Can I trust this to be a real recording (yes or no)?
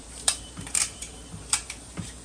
no